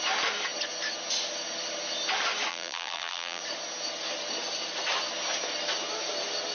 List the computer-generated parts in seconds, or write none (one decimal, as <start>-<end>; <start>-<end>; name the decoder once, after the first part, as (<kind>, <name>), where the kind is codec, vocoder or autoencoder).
2.5-3.4 (vocoder, BigVGAN v2)